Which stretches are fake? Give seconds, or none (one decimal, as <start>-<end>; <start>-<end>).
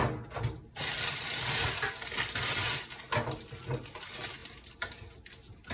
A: none